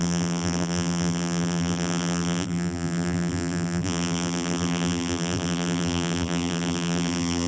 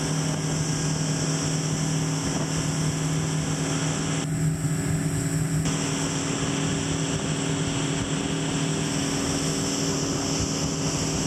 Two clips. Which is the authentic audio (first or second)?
second